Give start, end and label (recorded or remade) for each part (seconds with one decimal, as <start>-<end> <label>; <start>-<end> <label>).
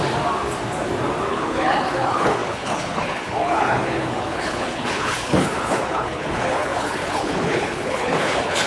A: 0.0-1.3 recorded; 1.3-8.7 remade